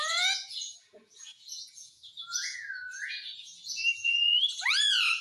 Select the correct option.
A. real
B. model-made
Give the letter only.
B